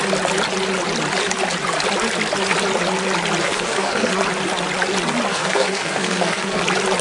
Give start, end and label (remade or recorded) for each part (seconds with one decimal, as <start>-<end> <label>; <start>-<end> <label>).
0.0-3.4 recorded; 3.4-4.1 remade; 4.1-5.3 recorded; 5.3-6.6 remade; 6.6-7.0 recorded